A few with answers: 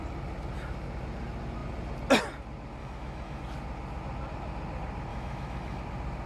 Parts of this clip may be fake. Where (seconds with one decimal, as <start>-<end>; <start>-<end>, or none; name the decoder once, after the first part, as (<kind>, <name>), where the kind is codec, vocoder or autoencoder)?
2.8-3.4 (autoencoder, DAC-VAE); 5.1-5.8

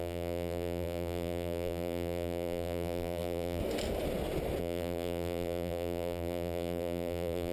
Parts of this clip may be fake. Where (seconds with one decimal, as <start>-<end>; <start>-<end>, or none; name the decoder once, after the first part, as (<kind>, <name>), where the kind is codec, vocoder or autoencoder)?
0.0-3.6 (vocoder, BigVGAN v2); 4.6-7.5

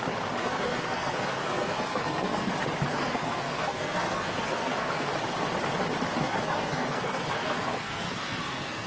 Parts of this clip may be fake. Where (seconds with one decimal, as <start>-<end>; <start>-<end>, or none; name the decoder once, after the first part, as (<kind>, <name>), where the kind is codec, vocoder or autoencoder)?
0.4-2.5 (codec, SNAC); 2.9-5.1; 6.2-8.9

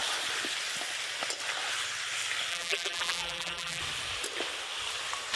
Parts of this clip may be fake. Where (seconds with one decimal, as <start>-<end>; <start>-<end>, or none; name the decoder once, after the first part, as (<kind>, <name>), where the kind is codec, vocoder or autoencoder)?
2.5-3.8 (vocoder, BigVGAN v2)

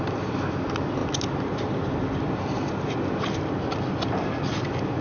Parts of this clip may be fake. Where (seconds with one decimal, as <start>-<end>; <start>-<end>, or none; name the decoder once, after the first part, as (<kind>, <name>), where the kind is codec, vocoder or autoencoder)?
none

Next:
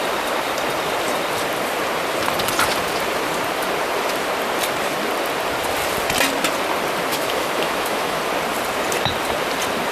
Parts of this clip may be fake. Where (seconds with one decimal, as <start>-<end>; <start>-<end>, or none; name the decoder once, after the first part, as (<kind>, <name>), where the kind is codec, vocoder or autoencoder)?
7.1-8.2 (autoencoder, DAC-VAE)

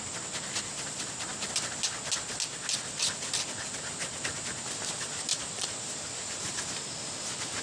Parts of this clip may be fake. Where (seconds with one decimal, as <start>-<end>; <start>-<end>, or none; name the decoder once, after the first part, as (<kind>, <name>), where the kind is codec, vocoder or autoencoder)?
5.3-6.6 (vocoder, BigVGAN v2)